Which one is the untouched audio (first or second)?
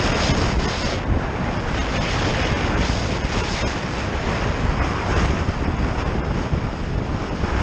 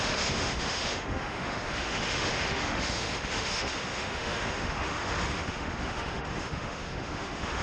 first